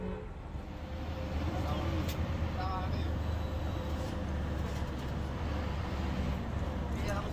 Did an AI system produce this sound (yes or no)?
no